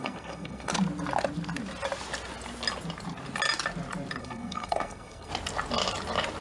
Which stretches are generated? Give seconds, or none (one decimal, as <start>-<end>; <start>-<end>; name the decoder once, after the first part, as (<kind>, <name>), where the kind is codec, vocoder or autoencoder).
0.0-0.7 (codec, SNAC); 4.2-5.3